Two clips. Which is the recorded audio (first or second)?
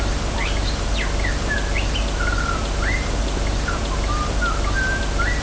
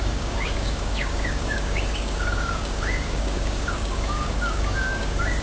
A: first